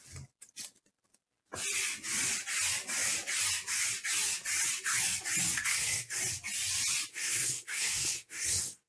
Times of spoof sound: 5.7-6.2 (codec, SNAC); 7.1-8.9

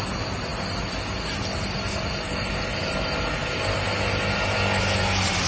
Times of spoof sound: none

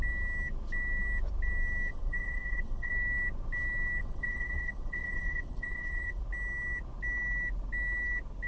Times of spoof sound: 1.9-2.9 (vocoder, WaveNeXt); 4.0-6.2